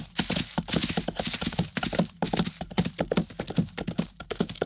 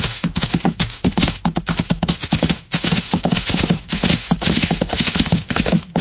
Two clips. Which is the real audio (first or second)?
first